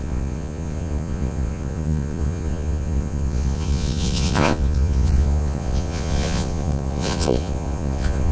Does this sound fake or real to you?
fake